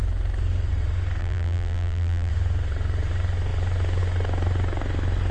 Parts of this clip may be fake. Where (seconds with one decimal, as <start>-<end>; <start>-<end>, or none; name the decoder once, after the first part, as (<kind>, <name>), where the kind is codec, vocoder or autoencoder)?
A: 1.2-2.3 (vocoder, BigVGAN v2)